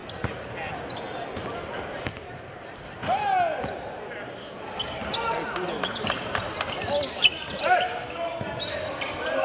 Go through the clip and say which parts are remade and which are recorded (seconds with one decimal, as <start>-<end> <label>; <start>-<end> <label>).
0.0-9.4 recorded